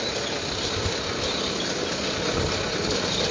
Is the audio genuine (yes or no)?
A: yes